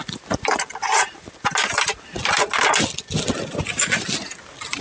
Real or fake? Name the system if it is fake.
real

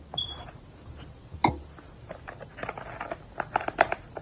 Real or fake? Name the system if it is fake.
real